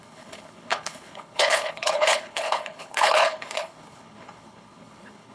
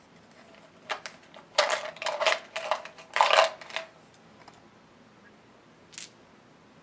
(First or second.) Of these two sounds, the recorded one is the second